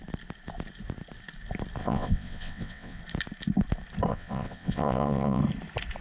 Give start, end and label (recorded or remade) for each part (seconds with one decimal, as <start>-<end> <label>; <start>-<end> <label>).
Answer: 0.0-1.8 recorded; 1.8-3.0 remade; 3.0-4.1 recorded; 4.1-5.4 remade; 5.4-6.0 recorded